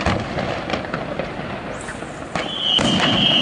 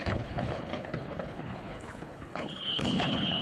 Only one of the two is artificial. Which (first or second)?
second